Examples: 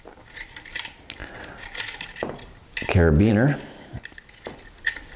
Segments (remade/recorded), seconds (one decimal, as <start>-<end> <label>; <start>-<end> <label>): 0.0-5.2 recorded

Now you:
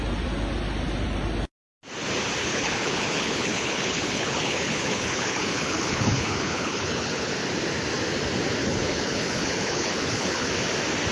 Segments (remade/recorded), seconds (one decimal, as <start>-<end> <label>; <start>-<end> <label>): 0.0-2.4 recorded; 2.4-7.3 remade; 7.3-8.6 recorded; 8.6-10.5 remade; 10.5-11.1 recorded

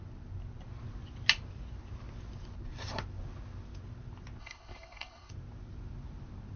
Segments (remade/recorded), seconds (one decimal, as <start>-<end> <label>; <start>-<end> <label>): 0.0-4.4 recorded; 4.4-5.3 remade; 5.3-6.6 recorded

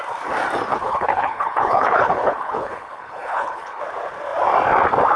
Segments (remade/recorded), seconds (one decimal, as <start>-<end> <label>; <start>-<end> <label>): 0.0-0.7 recorded; 0.7-3.8 remade; 3.8-5.2 recorded

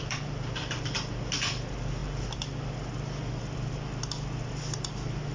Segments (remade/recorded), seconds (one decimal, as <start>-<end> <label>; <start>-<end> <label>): 0.0-5.3 recorded

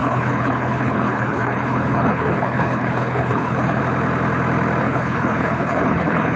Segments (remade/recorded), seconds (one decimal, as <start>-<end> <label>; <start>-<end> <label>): 0.0-3.8 remade; 3.8-4.8 recorded; 4.8-6.4 remade

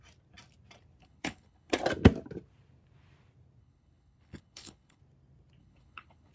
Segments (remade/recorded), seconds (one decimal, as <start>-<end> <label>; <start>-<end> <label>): 0.0-1.0 recorded; 1.0-1.8 remade; 1.8-3.6 recorded; 3.6-5.0 remade; 5.0-5.6 recorded; 5.6-6.3 remade